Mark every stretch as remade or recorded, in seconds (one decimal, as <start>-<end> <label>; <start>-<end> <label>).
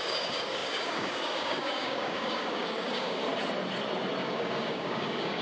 0.0-3.2 remade; 3.2-4.2 recorded; 4.2-5.4 remade